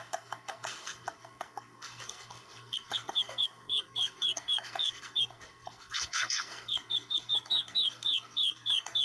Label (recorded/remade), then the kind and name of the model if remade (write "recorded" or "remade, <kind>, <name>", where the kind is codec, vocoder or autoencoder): remade, codec, SNAC